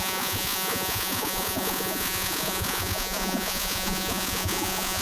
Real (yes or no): no